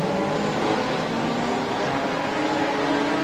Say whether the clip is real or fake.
real